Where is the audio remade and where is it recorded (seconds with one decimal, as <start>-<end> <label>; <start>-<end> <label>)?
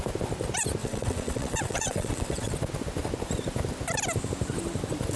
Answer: 0.0-0.8 recorded; 0.8-2.5 remade; 2.5-5.2 recorded